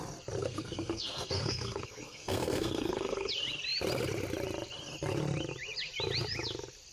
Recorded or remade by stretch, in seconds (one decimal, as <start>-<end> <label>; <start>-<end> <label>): 0.0-0.4 recorded; 0.4-3.3 remade; 3.3-6.9 recorded